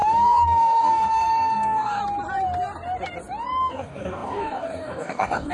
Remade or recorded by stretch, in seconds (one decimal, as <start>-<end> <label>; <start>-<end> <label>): 0.0-2.0 remade; 2.0-3.7 recorded; 3.7-5.5 remade